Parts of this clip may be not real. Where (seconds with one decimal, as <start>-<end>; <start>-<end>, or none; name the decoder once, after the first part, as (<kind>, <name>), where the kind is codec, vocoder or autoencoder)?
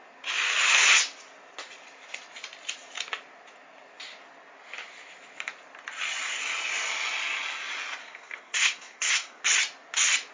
8.0-9.4 (codec, SNAC)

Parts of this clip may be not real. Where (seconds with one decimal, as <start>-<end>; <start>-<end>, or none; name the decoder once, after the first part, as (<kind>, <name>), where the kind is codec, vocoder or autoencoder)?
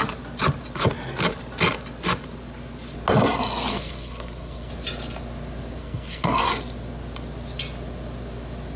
3.7-4.7 (codec, SNAC); 5.8-6.4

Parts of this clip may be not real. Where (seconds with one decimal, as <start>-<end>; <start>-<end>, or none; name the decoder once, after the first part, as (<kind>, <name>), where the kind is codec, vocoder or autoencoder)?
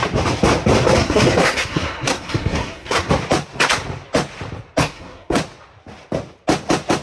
1.0-3.1 (codec, SNAC); 4.8-5.4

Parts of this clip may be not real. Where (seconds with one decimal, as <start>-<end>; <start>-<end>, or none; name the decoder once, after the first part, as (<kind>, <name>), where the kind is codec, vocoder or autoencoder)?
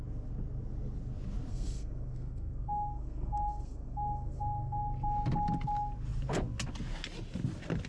1.5-4.8 (codec, SNAC)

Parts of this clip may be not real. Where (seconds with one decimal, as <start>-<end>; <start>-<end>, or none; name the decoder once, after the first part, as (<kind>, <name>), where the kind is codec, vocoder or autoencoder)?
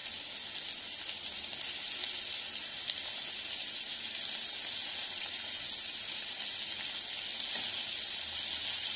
none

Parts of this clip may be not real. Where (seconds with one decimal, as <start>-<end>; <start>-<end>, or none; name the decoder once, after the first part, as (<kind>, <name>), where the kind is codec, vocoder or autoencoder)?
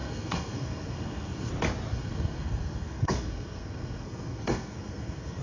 0.0-1.5 (codec, SNAC); 1.9-5.4